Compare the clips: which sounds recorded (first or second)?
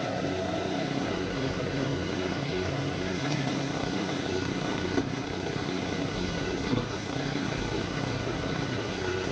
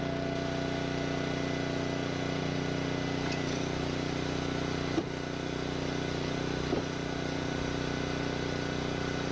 second